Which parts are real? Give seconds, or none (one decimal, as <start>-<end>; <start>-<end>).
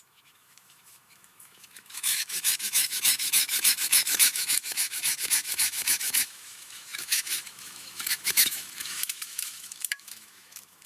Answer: none